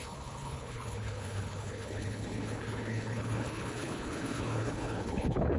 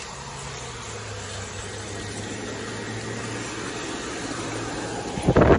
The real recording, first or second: second